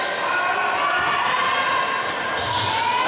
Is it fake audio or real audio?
real